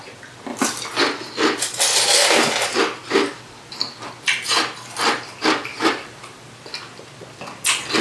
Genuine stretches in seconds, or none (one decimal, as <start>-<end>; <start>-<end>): 0.0-0.5; 1.0-5.7; 6.5-8.0